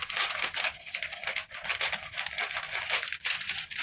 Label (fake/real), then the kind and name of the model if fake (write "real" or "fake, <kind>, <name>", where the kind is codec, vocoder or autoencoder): real